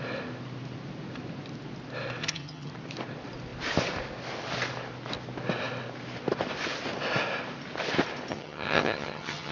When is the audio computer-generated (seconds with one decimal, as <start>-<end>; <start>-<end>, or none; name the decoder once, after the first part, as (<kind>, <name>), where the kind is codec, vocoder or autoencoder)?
2.2-2.7 (vocoder, HiFi-GAN); 8.3-9.5